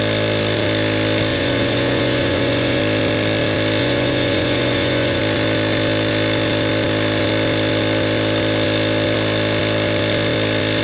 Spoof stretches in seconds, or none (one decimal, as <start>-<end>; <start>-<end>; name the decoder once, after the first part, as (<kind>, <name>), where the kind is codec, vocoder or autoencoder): 1.3-2.8 (vocoder, Vocos); 3.8-5.2